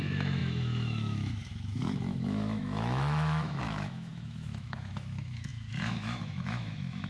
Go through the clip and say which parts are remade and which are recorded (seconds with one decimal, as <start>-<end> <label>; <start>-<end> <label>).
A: 0.0-7.1 remade